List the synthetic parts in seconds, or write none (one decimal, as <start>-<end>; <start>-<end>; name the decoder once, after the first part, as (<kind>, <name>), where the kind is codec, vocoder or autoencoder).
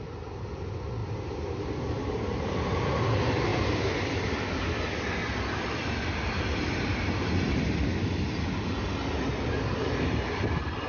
1.0-2.5 (vocoder, BigVGAN v2); 3.5-4.8; 6.5-8.1